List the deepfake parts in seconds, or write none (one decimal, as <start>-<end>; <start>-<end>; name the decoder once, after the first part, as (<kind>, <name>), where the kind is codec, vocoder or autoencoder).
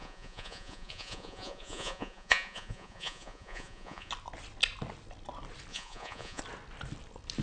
0.0-4.1 (vocoder, Vocos); 5.7-6.4